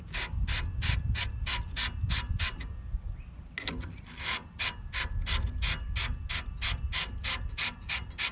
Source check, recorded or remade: recorded